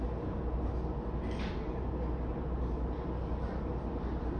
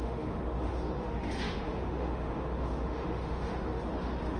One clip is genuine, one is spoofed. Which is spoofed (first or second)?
second